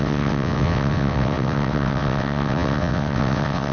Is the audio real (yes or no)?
no